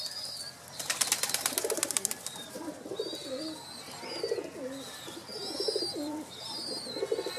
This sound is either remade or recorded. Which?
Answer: recorded